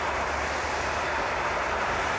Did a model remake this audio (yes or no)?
no